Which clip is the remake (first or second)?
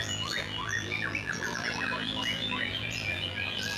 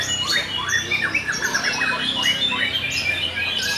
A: first